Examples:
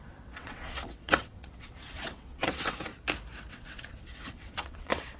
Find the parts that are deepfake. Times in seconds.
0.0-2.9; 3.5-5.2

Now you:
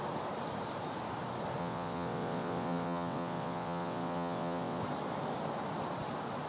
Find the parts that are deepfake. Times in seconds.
1.6-4.8

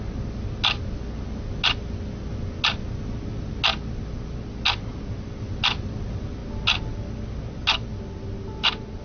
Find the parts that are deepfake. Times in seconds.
none

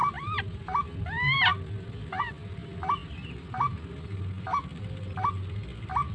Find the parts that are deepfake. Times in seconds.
none

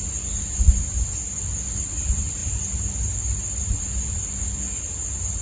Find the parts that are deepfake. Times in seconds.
none

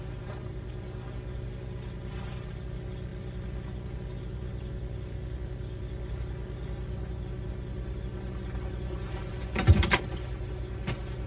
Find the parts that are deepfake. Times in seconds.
none

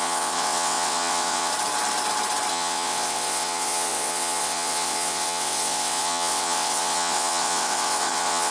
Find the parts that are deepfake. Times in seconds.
0.0-1.5; 2.5-8.5